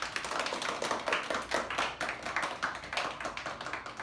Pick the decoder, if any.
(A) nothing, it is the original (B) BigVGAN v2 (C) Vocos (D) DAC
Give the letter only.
A